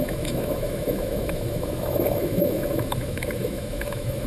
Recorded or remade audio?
remade